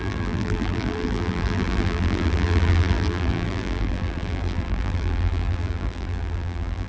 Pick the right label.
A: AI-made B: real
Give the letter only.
A